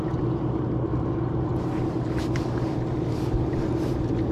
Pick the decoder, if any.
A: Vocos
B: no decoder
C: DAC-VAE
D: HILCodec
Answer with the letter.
B